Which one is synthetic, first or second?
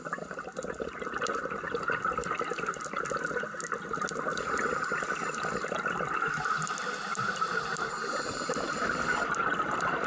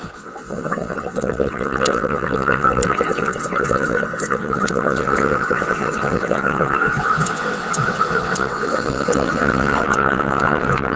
second